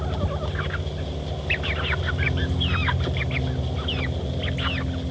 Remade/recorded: recorded